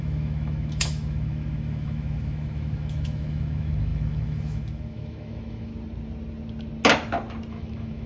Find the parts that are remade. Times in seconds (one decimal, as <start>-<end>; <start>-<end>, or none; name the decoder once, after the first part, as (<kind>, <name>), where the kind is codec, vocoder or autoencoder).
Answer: 0.0-5.7 (autoencoder, DAC-VAE); 7.5-8.1